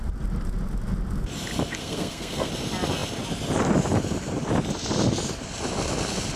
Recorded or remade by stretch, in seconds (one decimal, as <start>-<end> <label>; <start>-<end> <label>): 0.0-1.8 recorded; 1.8-2.5 remade; 2.5-6.4 recorded